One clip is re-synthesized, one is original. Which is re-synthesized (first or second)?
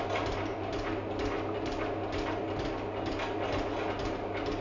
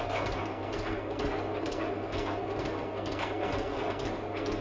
second